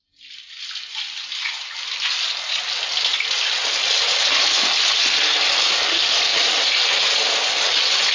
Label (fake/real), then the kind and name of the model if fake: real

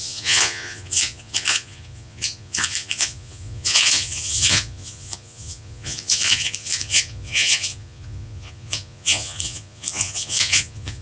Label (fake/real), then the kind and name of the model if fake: fake, vocoder, Vocos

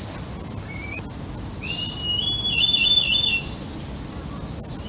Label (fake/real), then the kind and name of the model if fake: real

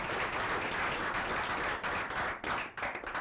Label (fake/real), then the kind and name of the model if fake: real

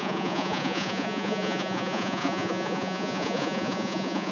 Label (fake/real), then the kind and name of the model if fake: fake, vocoder, Vocos